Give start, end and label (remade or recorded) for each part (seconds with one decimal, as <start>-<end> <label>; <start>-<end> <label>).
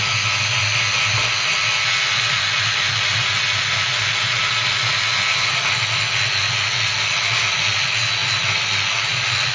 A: 0.0-9.5 recorded